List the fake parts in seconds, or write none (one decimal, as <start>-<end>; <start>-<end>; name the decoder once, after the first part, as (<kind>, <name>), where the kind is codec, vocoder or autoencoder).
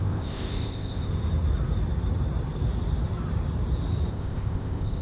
0.0-1.1 (codec, ZipCodec); 4.1-5.0